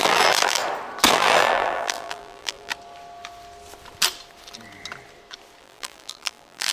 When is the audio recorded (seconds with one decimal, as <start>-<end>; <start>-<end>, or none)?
0.6-1.1; 2.7-5.6